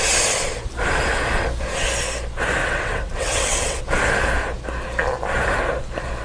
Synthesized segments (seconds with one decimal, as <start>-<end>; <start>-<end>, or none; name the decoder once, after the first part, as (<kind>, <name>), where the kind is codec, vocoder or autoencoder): 2.6-3.8 (vocoder, WaveNeXt)